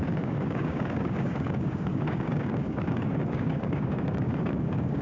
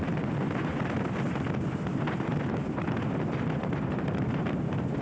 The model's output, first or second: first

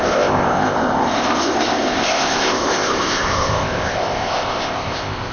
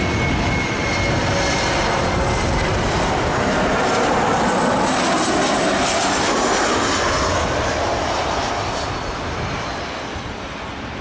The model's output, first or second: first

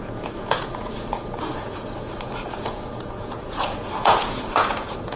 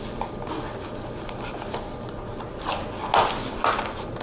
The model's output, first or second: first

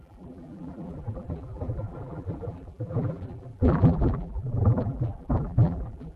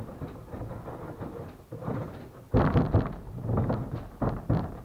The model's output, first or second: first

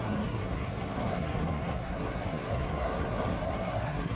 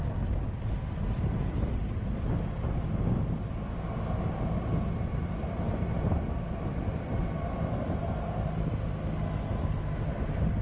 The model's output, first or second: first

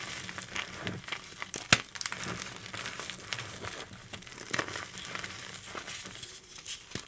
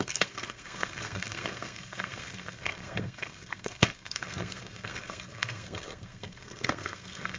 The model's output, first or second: second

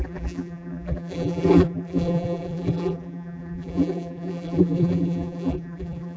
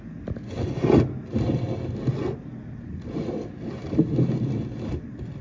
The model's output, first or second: first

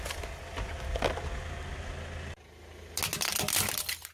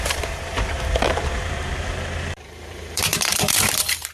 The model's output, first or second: second